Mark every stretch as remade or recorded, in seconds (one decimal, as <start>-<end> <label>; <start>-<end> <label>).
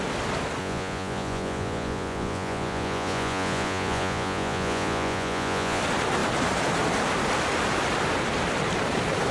0.0-0.6 recorded; 0.6-5.8 remade; 5.8-9.3 recorded